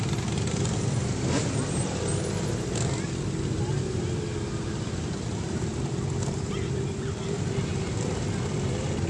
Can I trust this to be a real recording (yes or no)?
yes